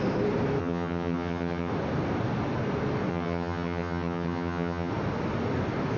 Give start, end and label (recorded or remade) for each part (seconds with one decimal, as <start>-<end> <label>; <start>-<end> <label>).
0.0-0.6 recorded; 0.6-1.7 remade; 1.7-3.1 recorded; 3.1-4.9 remade; 4.9-6.0 recorded